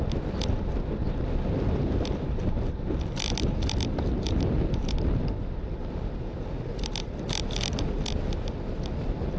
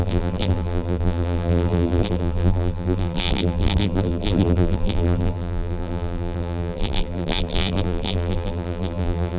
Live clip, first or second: first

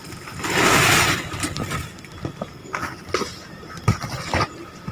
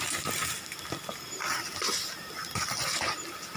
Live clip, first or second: second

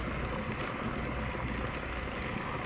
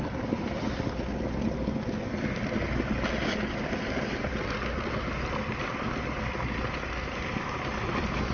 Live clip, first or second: first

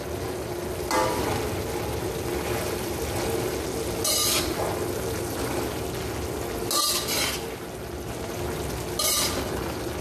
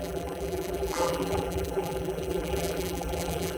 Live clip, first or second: first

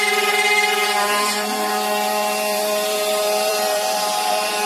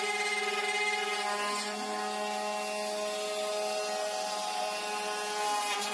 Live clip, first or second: second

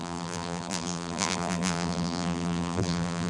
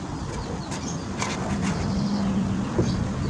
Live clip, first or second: second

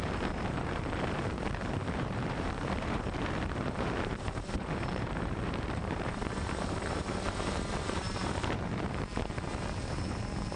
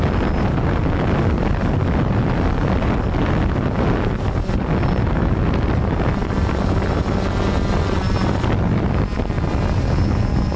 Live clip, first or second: second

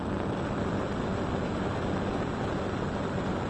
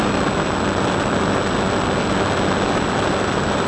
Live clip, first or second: second